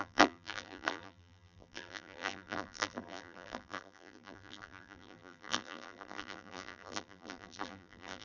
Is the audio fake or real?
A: fake